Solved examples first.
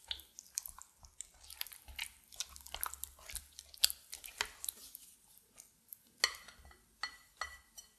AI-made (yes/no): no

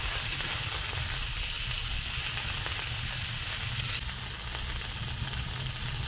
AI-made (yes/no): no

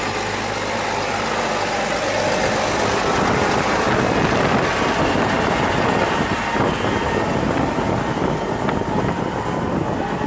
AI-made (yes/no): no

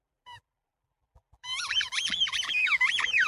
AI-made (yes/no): yes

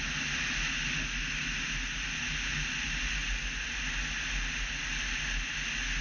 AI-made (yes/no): no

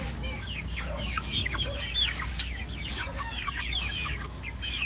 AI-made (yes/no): yes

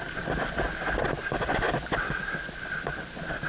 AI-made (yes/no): no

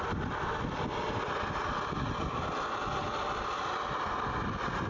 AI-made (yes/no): no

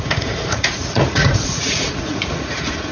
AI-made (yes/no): yes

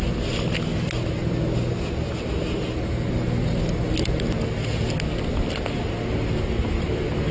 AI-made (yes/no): no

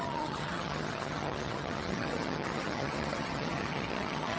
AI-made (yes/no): yes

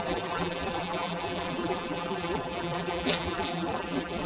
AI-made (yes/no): yes